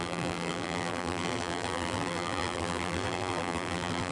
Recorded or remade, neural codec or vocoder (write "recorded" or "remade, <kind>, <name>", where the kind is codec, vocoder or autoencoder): remade, vocoder, BigVGAN v2